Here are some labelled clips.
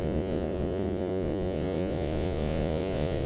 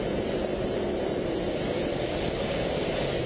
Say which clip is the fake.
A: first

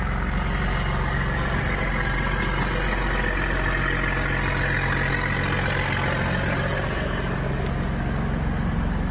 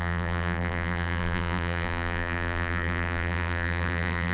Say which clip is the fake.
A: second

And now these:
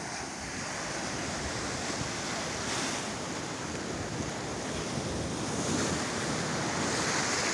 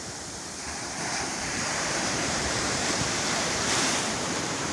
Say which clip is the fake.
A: second